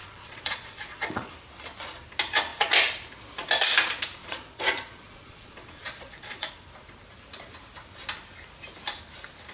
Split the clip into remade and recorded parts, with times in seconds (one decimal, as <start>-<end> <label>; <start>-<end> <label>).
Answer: 0.0-1.3 remade; 1.3-4.2 recorded; 4.2-6.5 remade; 6.5-9.5 recorded